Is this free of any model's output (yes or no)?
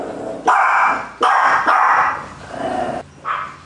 yes